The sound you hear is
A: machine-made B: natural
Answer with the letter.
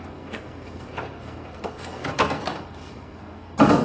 A